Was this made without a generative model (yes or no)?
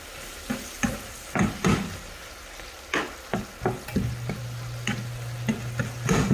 yes